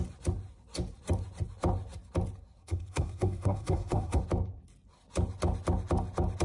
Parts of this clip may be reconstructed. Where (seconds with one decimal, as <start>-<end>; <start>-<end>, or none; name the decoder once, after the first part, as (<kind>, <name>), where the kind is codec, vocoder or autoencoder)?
2.6-4.2 (codec, SNAC)